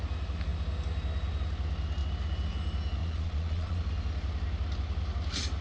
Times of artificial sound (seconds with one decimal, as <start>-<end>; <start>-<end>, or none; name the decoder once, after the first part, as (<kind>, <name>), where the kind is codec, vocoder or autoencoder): 3.0-3.8 (vocoder, Vocos)